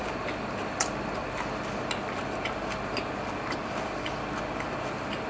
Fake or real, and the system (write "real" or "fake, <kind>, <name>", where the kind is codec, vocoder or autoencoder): real